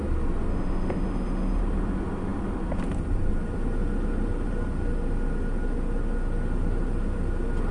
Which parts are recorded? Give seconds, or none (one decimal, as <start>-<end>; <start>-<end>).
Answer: 0.0-0.5; 1.6-7.7